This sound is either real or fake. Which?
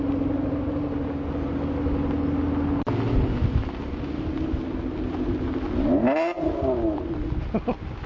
real